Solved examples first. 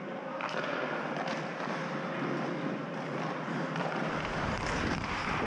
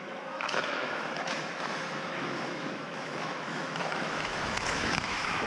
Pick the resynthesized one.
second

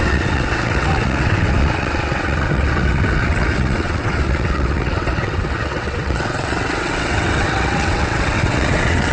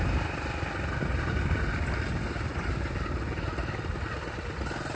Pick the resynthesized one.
first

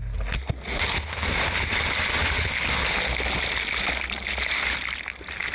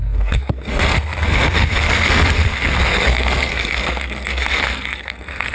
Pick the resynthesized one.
second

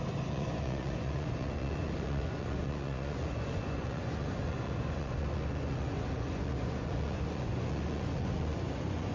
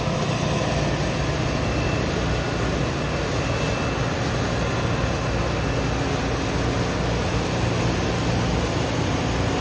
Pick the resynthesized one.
first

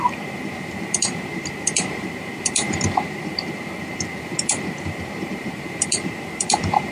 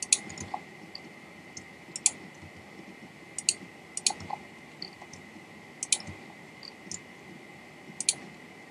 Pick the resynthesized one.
first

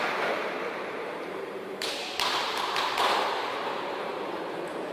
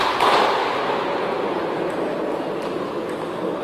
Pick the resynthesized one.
first